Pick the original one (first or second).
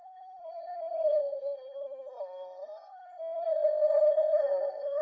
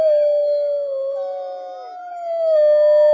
second